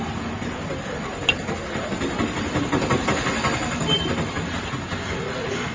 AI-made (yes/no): no